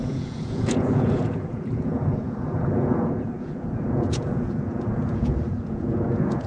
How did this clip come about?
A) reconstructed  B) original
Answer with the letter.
A